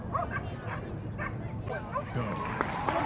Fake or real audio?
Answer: real